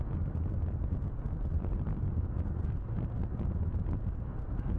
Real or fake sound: real